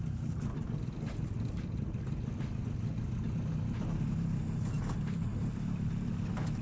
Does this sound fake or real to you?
real